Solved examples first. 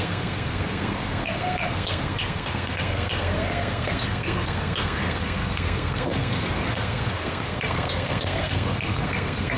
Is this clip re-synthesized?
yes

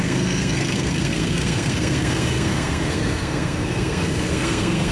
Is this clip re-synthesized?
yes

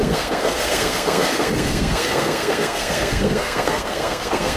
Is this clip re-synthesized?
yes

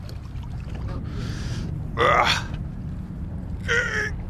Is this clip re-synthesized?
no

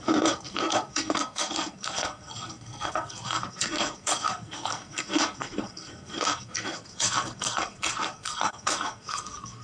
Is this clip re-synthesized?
yes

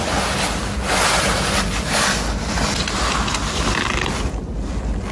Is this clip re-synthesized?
no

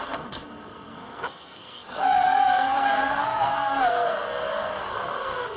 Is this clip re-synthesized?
yes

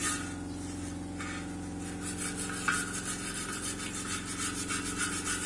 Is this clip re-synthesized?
no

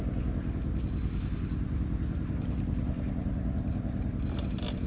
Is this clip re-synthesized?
no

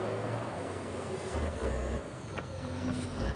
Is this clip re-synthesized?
yes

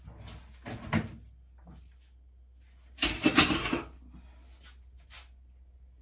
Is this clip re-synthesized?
no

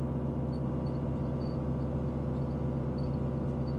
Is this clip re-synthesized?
no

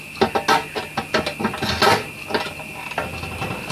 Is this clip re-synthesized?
no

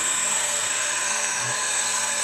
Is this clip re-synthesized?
yes